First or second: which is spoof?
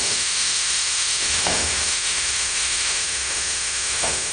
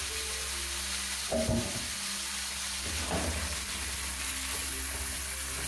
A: first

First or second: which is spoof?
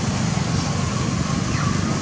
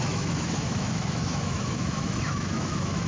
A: second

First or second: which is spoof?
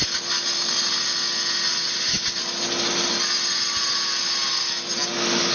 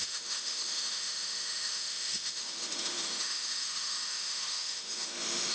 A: second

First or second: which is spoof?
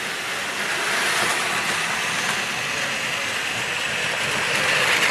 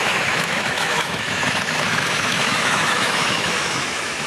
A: second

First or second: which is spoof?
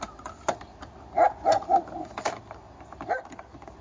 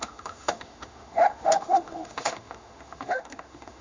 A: second